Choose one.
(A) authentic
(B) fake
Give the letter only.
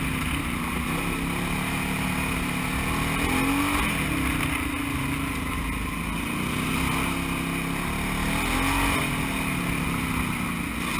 A